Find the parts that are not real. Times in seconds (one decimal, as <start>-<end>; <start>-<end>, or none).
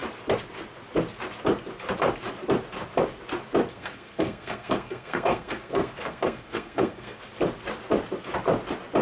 3.7-7.2